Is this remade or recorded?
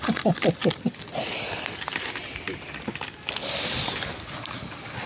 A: recorded